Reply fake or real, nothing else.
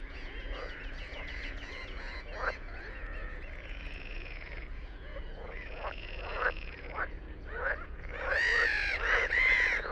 fake